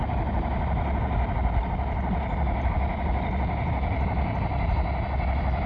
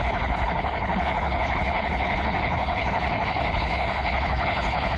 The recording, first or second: first